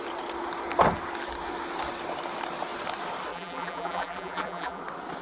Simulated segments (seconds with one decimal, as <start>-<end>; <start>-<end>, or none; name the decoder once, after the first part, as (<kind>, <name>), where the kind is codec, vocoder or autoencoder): 3.3-4.8 (vocoder, BigVGAN v2)